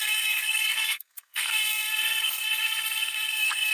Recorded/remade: remade